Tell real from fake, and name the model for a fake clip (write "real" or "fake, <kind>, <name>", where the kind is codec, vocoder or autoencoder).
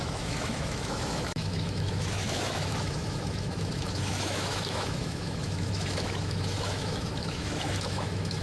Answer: fake, autoencoder, DAC-VAE